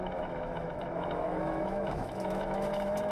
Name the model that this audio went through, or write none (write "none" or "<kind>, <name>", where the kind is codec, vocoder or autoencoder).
autoencoder, DAC-VAE